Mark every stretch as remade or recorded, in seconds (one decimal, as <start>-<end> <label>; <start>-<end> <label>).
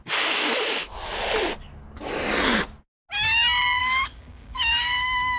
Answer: 0.0-3.8 recorded; 3.8-5.4 remade